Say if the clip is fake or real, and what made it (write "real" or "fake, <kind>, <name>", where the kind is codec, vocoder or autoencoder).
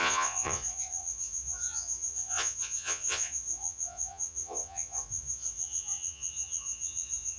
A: fake, vocoder, Vocos